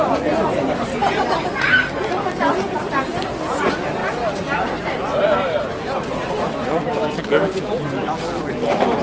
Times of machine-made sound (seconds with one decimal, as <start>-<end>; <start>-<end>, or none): none